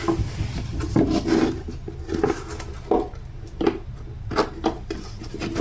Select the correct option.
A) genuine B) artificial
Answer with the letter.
A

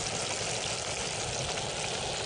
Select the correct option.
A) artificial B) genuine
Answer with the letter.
B